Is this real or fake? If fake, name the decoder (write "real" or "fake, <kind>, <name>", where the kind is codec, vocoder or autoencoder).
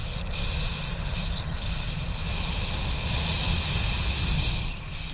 real